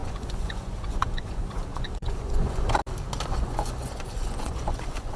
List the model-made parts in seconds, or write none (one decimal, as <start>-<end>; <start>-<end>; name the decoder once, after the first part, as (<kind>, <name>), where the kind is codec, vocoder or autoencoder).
0.0-2.8 (vocoder, Vocos); 3.3-5.2